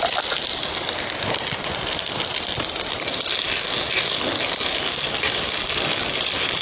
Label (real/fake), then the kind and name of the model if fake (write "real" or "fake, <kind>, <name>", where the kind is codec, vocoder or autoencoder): real